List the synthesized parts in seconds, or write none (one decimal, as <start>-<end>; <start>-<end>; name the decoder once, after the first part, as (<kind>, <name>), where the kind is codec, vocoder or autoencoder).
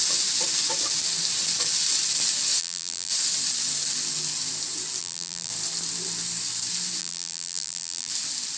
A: 2.6-3.1 (vocoder, BigVGAN v2); 5.0-5.5; 7.0-8.1